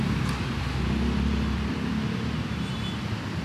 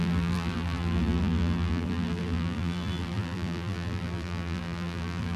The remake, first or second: second